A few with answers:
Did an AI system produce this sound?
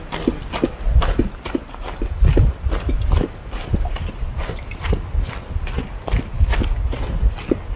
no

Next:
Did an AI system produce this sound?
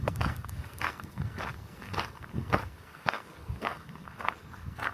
yes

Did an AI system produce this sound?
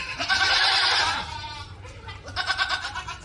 no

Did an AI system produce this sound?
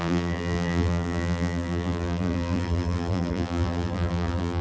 yes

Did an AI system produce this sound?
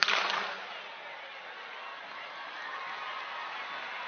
no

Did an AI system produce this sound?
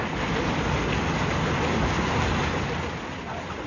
no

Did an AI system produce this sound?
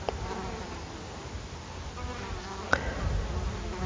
no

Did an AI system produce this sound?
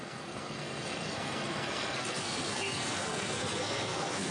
yes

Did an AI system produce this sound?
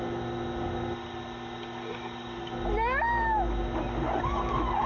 no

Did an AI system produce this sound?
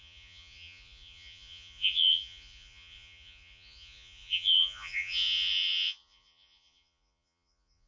yes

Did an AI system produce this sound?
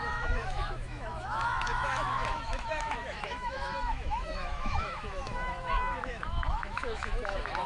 yes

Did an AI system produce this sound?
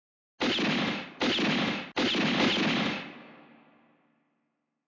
no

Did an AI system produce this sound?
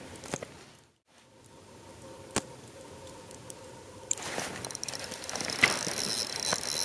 no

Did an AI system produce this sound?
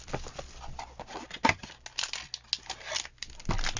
no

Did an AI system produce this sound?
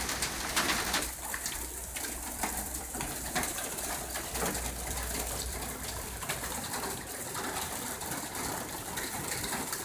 yes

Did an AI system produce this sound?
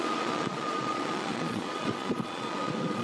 yes